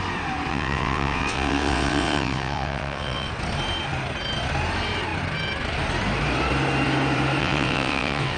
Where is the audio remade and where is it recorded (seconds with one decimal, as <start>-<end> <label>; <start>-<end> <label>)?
0.0-0.5 recorded; 0.5-3.3 remade; 3.3-7.4 recorded; 7.4-8.4 remade